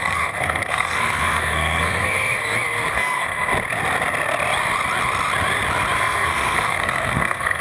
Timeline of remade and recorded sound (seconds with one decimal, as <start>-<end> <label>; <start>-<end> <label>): 0.0-2.4 remade; 2.4-2.9 recorded; 2.9-3.5 remade; 3.5-6.0 recorded; 6.0-7.6 remade